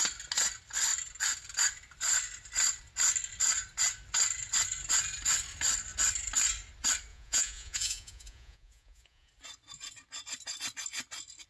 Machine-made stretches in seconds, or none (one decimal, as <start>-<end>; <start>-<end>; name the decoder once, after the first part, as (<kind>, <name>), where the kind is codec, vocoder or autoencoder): 7.1-9.3 (vocoder, Vocos)